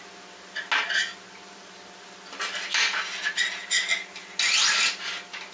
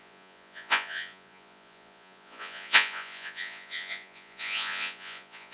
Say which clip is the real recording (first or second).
first